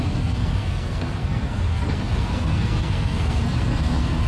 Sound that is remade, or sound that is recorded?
remade